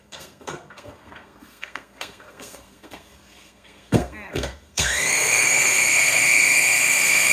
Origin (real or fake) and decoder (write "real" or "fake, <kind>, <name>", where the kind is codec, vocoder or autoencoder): fake, codec, SNAC